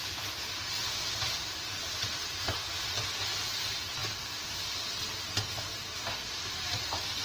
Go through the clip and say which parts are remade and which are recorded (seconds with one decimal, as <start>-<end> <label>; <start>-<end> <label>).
0.0-4.0 recorded; 4.0-4.9 remade; 4.9-7.2 recorded